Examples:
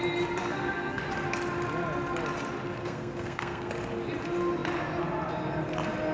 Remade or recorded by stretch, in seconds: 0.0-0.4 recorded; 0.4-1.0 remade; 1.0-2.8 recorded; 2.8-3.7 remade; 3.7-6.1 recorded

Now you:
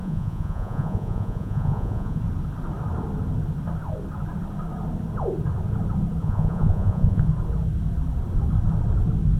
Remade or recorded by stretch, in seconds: 0.0-2.2 remade; 2.2-6.2 recorded; 6.2-7.3 remade; 7.3-9.4 recorded

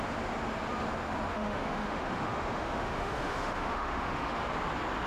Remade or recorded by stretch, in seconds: 0.0-1.3 recorded; 1.3-4.4 remade; 4.4-5.1 recorded

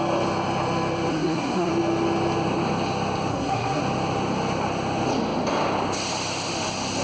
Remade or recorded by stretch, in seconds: 0.0-1.1 recorded; 1.1-1.7 remade; 1.7-3.3 recorded; 3.3-3.8 remade; 3.8-7.0 recorded

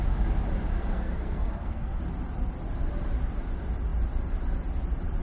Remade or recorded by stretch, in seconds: 0.0-0.7 recorded; 0.7-2.0 remade; 2.0-5.2 recorded

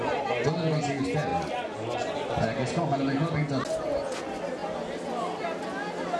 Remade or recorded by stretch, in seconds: 0.0-6.2 recorded